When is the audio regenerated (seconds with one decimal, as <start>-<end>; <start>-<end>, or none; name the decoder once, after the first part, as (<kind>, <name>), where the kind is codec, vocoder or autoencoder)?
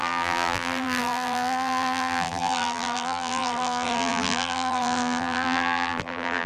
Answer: 0.0-6.5 (vocoder, BigVGAN v2)